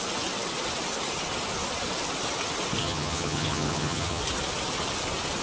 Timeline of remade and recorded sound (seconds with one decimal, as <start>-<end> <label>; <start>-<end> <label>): 0.0-2.8 recorded; 2.8-4.2 remade; 4.2-5.4 recorded